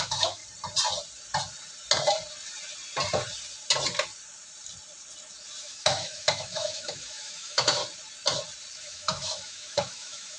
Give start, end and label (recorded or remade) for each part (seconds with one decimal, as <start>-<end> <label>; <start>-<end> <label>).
0.0-0.4 remade; 0.4-5.6 recorded; 5.6-7.8 remade; 7.8-8.8 recorded; 8.8-10.4 remade